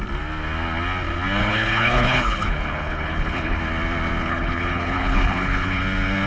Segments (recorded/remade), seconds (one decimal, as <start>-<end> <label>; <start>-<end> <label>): 0.0-1.4 recorded; 1.4-3.6 remade; 3.6-4.2 recorded; 4.2-5.8 remade; 5.8-6.3 recorded